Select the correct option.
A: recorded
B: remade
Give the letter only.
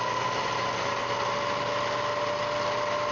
A